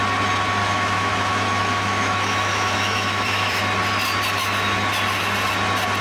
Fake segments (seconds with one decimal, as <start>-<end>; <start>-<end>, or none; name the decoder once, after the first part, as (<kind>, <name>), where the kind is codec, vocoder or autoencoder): 0.6-3.6 (autoencoder, DAC-VAE)